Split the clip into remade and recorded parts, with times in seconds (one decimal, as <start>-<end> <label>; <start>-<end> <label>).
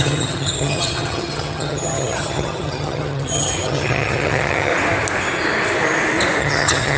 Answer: 0.0-4.7 remade; 4.7-6.4 recorded; 6.4-7.0 remade